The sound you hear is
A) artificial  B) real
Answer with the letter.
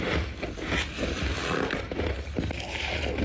B